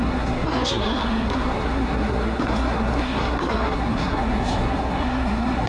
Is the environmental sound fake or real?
fake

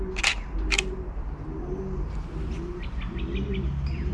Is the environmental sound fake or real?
real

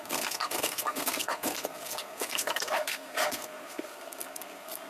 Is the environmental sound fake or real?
fake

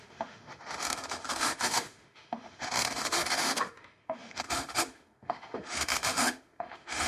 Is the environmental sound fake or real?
fake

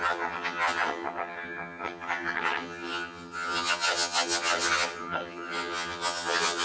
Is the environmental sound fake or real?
fake